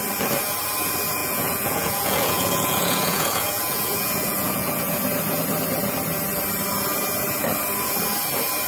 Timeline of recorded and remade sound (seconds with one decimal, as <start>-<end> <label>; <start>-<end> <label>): 0.0-1.2 recorded; 1.2-4.9 remade; 4.9-8.7 recorded